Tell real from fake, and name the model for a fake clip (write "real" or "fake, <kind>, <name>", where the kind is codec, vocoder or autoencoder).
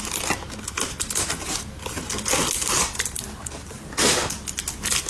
real